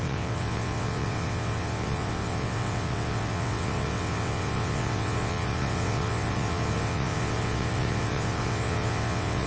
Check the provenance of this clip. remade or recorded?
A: remade